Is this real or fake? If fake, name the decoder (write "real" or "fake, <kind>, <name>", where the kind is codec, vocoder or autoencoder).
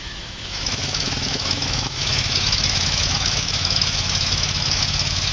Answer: fake, autoencoder, DAC-VAE